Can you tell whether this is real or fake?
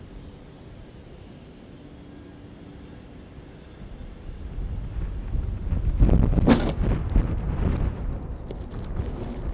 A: real